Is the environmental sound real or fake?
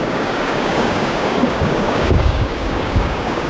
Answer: fake